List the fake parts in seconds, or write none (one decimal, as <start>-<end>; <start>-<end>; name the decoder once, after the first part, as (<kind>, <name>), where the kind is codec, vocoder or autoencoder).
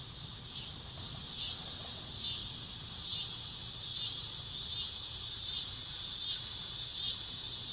none